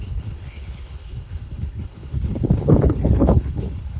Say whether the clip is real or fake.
fake